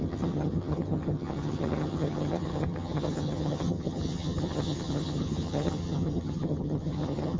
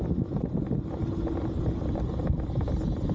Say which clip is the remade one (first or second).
first